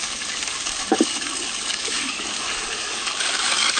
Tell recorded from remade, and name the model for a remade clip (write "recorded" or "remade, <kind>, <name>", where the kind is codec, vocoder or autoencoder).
remade, codec, DAC